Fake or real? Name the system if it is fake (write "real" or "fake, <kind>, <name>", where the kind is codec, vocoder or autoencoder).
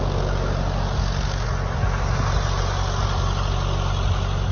real